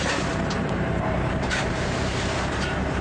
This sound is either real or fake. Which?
fake